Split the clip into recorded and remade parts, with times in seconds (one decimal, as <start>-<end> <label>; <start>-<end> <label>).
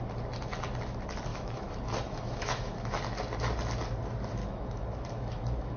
0.0-1.3 recorded; 1.3-3.0 remade; 3.0-4.4 recorded; 4.4-5.8 remade